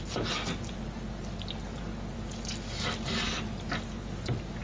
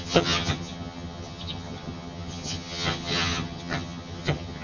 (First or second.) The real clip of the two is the first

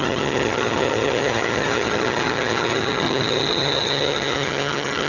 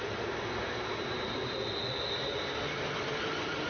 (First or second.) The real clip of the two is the second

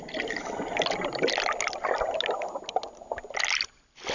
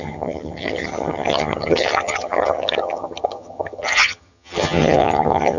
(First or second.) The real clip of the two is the first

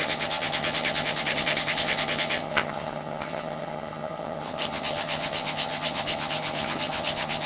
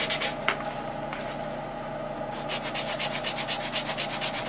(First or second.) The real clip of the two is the second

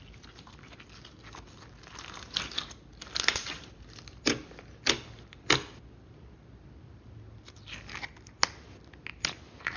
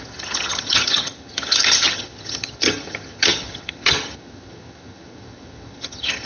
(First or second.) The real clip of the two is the first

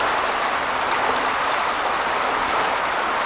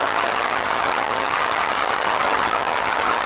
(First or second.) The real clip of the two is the first